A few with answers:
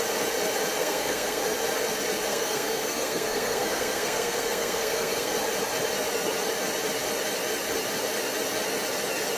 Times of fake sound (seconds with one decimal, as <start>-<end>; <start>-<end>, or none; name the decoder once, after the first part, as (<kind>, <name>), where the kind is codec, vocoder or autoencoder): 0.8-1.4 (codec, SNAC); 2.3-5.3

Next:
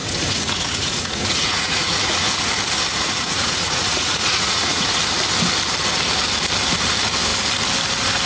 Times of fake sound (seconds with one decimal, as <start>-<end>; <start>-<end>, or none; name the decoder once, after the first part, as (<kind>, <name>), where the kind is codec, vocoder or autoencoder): 0.0-2.5 (vocoder, Vocos); 2.9-5.0

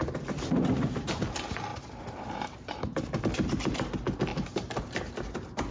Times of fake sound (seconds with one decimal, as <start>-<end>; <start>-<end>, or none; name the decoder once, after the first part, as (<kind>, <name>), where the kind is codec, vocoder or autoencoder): 1.7-3.2 (vocoder, BigVGAN v2); 4.3-4.8

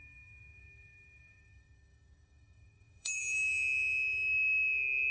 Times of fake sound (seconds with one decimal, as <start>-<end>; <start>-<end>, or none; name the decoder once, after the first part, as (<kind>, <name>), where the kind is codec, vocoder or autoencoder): 0.0-3.2 (codec, DAC)